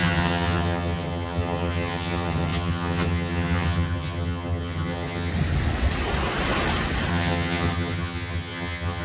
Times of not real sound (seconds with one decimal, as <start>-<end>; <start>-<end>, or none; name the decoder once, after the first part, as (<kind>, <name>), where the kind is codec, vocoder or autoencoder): 0.0-5.3 (vocoder, HiFi-GAN); 7.1-9.0